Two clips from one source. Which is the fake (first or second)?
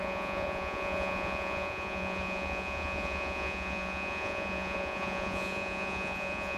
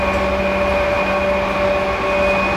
first